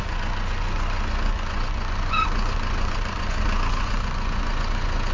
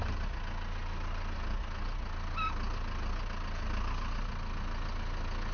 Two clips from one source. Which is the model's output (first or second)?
first